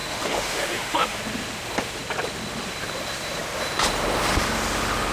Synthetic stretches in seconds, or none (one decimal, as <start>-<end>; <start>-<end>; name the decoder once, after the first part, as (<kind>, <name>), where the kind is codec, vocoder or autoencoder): 0.0-1.2 (autoencoder, DAC-VAE)